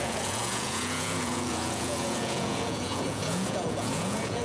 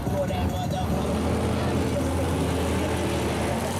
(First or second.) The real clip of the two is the second